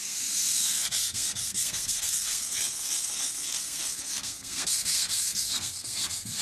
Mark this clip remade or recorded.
remade